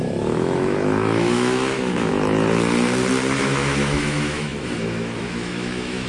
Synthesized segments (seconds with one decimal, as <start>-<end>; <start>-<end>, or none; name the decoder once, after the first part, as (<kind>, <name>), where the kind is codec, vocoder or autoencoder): 0.0-2.1 (autoencoder, DAC-VAE); 3.4-6.1